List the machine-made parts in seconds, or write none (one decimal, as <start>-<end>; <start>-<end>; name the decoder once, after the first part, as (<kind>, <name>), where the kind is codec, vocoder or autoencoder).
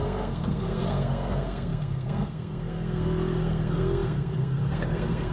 0.0-5.3 (codec, SNAC)